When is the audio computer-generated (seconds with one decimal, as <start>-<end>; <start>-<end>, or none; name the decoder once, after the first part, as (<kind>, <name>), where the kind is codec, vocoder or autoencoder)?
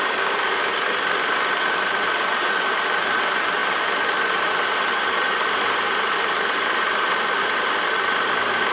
none